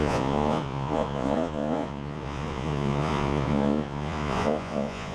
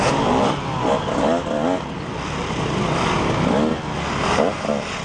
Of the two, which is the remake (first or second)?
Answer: first